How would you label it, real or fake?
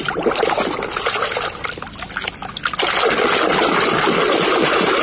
real